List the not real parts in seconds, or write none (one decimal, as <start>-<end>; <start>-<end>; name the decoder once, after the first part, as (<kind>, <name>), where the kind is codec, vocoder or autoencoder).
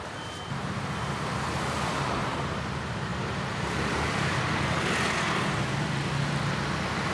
none